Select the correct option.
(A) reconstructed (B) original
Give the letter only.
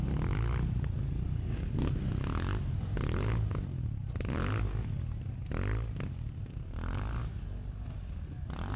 B